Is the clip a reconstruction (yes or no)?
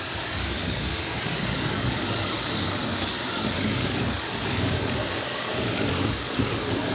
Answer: yes